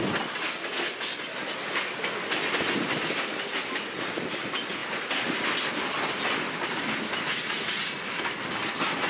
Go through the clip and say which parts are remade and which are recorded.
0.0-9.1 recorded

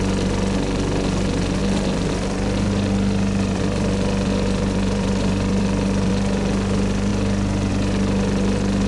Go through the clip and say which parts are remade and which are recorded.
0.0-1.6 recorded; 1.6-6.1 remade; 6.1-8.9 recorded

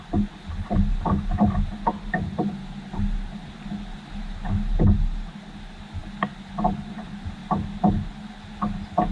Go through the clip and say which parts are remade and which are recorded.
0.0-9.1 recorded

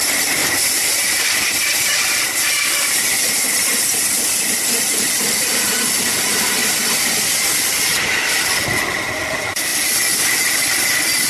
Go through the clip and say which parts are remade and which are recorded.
0.0-0.4 recorded; 0.4-3.4 remade; 3.4-6.6 recorded; 6.6-8.5 remade; 8.5-11.3 recorded

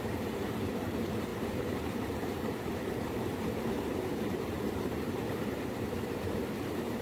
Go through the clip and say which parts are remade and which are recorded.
0.0-7.0 remade

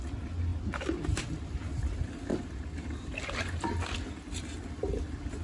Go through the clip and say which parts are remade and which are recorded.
0.0-5.4 recorded